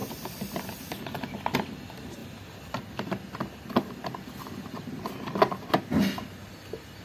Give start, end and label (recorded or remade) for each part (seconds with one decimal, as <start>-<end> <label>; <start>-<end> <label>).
0.0-7.0 recorded